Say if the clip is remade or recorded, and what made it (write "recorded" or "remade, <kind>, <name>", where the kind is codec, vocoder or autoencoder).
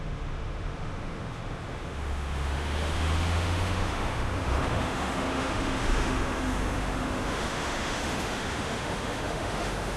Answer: remade, autoencoder, DAC-VAE